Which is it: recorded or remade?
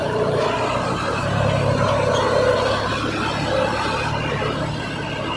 recorded